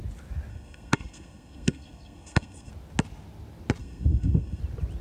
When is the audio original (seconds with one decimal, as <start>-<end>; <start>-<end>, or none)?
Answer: 0.0-0.5; 2.7-3.8; 4.6-5.0